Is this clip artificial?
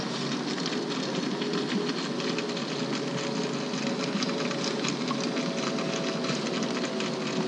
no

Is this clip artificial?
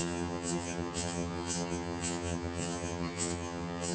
yes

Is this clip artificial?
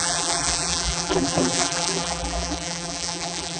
yes